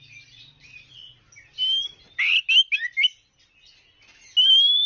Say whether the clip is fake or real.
real